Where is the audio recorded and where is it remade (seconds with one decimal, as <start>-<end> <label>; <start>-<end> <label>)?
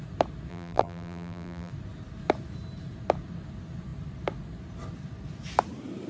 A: 0.0-0.5 recorded; 0.5-1.7 remade; 1.7-6.1 recorded